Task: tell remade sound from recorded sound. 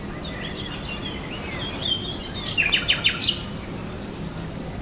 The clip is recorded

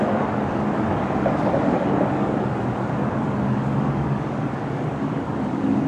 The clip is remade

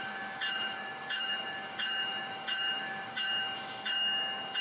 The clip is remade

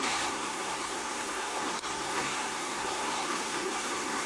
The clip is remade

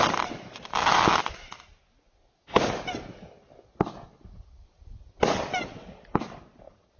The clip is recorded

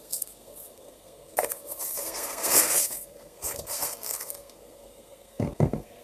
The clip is remade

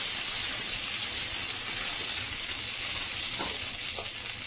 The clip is recorded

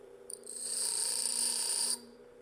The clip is remade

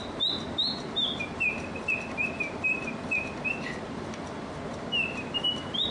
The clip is remade